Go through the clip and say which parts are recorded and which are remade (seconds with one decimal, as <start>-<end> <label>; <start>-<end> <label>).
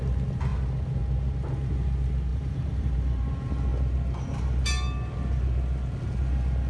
0.0-2.3 recorded; 2.3-3.3 remade; 3.3-6.7 recorded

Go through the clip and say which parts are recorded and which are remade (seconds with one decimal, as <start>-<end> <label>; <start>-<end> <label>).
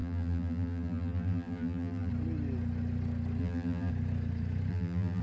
0.0-2.1 remade; 2.1-3.4 recorded; 3.4-3.9 remade; 3.9-4.7 recorded; 4.7-5.2 remade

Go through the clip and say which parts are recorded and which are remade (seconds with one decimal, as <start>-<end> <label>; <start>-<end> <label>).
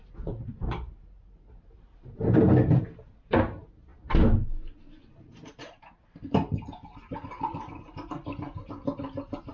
0.0-3.9 remade; 3.9-5.2 recorded; 5.2-7.5 remade; 7.5-9.5 recorded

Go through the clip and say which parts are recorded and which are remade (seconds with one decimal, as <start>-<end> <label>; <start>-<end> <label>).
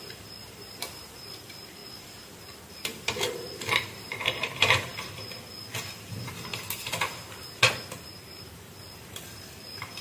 0.0-1.8 remade; 1.8-2.4 recorded; 2.4-6.5 remade; 6.5-8.4 recorded; 8.4-10.0 remade